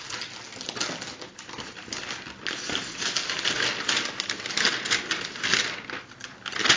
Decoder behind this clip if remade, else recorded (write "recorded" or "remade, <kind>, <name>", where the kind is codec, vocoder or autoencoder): recorded